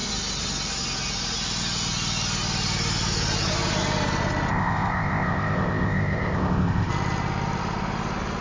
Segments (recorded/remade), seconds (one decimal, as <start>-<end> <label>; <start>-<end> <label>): 0.0-4.5 recorded; 4.5-6.9 remade; 6.9-8.4 recorded